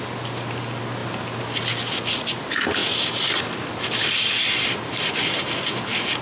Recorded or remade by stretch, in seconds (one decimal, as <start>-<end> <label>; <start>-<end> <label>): 0.0-1.0 recorded; 1.0-1.7 remade; 1.7-2.8 recorded; 2.8-3.7 remade; 3.7-6.2 recorded